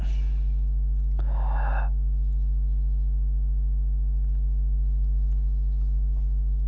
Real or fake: real